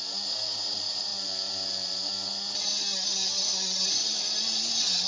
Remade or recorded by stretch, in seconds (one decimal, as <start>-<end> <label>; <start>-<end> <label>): 0.0-5.1 recorded